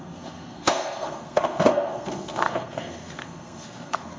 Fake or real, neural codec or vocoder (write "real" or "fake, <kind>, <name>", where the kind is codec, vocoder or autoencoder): fake, codec, SNAC